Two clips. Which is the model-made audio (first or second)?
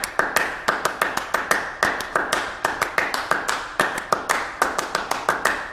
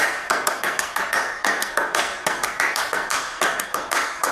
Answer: second